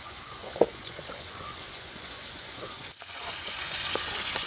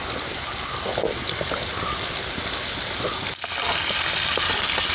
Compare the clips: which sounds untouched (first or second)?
second